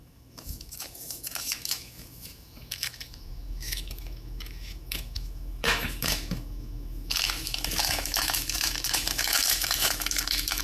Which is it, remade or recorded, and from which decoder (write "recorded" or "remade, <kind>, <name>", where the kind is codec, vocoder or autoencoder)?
remade, autoencoder, DAC-VAE